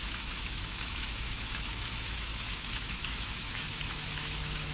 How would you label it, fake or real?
fake